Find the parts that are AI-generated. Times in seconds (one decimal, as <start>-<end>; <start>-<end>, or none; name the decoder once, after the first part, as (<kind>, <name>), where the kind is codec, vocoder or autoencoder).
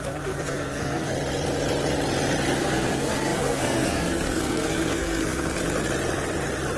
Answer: 0.0-1.1 (codec, SNAC); 2.6-5.6